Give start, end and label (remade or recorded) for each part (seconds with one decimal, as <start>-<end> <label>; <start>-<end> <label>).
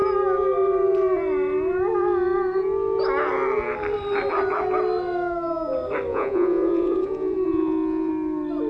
0.0-6.1 recorded; 6.1-8.1 remade; 8.1-8.7 recorded